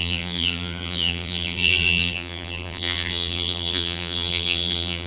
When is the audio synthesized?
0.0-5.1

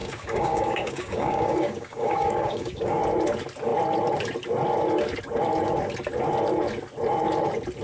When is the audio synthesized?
0.0-3.0

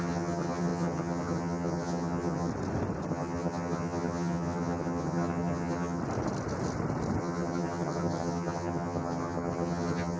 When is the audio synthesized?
0.0-2.5; 3.1-6.0; 7.2-10.2

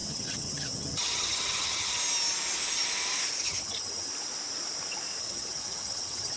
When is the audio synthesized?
0.0-2.0; 3.4-4.1; 5.2-6.4

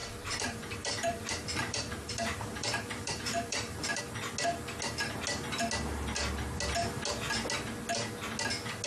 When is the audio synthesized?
0.0-4.0

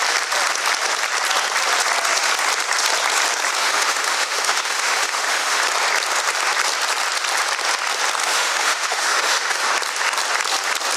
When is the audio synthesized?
3.6-5.6; 8.2-9.6

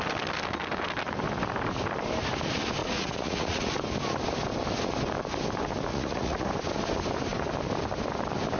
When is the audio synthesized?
2.8-3.7; 5.9-6.5